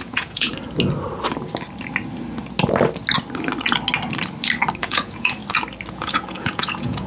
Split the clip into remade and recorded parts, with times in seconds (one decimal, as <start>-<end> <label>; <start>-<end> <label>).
0.0-0.5 remade; 0.5-4.8 recorded; 4.8-5.4 remade; 5.4-5.9 recorded; 5.9-7.1 remade